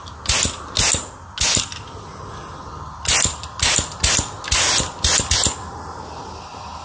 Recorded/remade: recorded